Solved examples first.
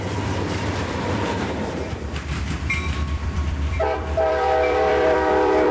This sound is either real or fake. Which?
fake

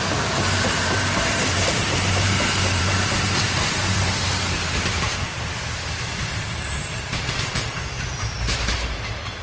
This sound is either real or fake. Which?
fake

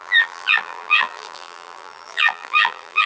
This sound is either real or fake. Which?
fake